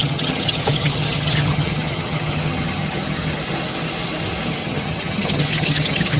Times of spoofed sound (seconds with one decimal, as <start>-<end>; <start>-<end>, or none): 0.0-3.4; 4.6-6.2